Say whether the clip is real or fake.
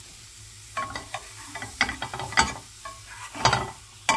real